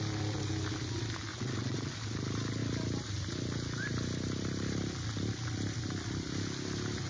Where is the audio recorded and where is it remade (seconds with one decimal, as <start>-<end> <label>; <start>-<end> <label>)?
0.0-1.3 recorded; 1.3-1.9 remade; 1.9-7.1 recorded